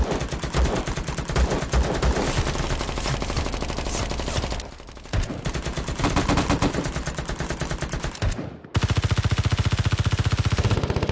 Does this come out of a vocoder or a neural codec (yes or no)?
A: no